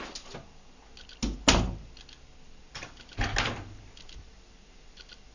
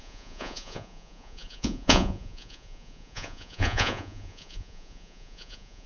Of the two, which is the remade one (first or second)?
second